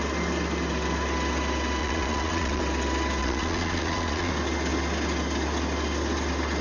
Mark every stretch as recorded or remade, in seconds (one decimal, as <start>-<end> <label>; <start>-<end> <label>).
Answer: 0.0-1.8 recorded; 1.8-2.6 remade; 2.6-3.2 recorded; 3.2-4.3 remade; 4.3-6.6 recorded